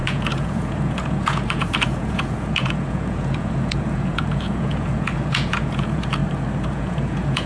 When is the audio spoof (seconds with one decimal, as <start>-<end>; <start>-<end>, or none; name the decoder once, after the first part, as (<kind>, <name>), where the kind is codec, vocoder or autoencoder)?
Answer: 0.0-6.2 (vocoder, Vocos); 6.7-7.5